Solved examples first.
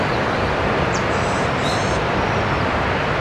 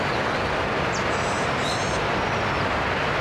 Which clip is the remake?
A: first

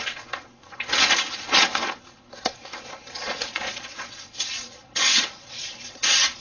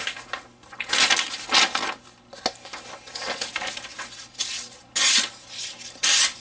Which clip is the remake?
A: first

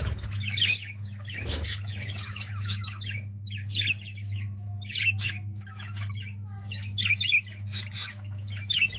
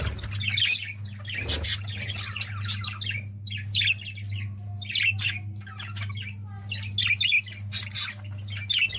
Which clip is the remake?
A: first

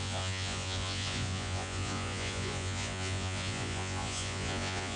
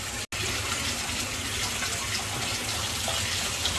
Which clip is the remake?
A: first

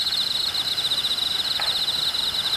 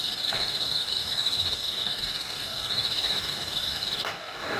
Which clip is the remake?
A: second